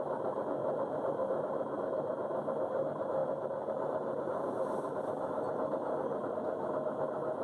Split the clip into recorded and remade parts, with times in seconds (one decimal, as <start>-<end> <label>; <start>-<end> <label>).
0.0-0.6 recorded; 0.6-2.0 remade; 2.0-3.2 recorded; 3.2-6.3 remade; 6.3-7.4 recorded